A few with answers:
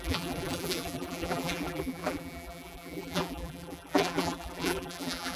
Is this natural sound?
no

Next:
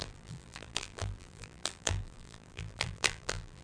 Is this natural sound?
no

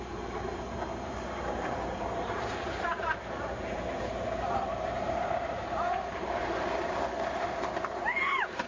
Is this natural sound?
no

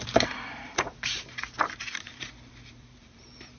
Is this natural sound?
no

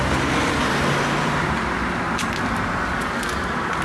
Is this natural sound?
yes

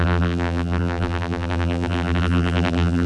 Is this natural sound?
no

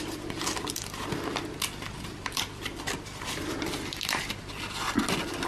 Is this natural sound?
yes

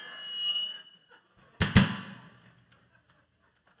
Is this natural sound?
yes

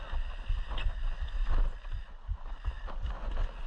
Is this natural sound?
yes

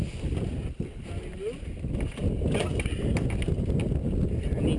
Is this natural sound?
yes